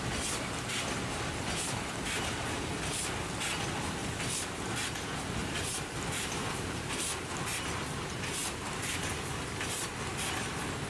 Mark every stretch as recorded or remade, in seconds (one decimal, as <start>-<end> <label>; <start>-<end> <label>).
0.0-4.0 recorded; 4.0-4.6 remade; 4.6-5.4 recorded; 5.4-7.0 remade; 7.0-8.4 recorded; 8.4-9.9 remade; 9.9-10.9 recorded